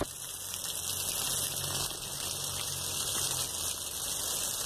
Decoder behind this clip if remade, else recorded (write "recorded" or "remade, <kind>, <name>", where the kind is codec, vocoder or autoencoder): recorded